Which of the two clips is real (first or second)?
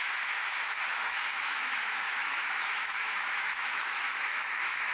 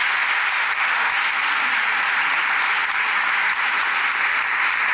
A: second